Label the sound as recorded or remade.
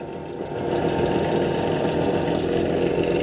recorded